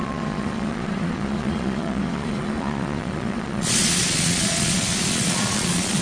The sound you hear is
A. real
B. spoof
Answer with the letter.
B